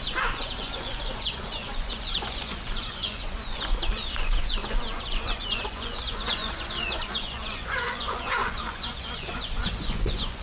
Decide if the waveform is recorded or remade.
remade